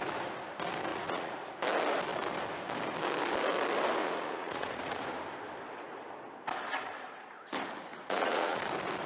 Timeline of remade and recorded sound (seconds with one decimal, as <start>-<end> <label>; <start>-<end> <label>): 0.0-0.9 recorded; 0.9-1.6 remade; 1.6-4.0 recorded; 4.0-5.0 remade; 5.0-7.9 recorded; 7.9-8.6 remade; 8.6-9.1 recorded

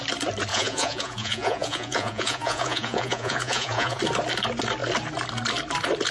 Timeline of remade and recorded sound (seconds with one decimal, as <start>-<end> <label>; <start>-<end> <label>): 0.0-0.5 recorded; 0.5-4.0 remade; 4.0-6.1 recorded

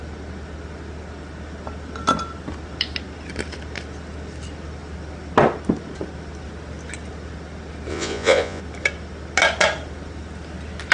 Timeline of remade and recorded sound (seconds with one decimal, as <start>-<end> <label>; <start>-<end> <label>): 0.0-7.9 recorded; 7.9-8.6 remade; 8.6-10.9 recorded

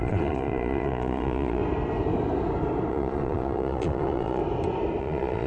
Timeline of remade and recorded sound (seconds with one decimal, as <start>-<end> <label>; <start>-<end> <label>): 0.0-1.6 remade; 1.6-2.9 recorded; 2.9-4.4 remade; 4.4-5.0 recorded; 5.0-5.5 remade

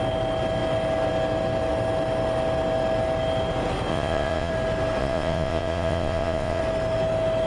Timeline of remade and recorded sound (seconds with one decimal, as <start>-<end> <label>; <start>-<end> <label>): 0.0-3.9 recorded; 3.9-4.5 remade; 4.5-5.0 recorded; 5.0-6.6 remade; 6.6-7.5 recorded

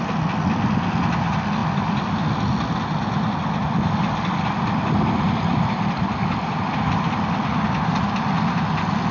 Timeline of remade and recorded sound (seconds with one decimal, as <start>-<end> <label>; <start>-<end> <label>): 0.0-9.1 recorded